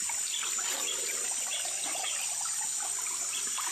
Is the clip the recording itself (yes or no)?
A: yes